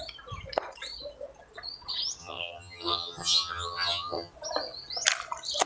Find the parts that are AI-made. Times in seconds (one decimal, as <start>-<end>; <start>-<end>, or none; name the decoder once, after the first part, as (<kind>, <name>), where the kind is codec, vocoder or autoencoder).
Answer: 2.2-4.3 (vocoder, HiFi-GAN)